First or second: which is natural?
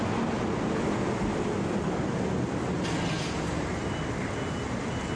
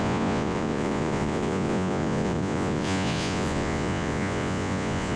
first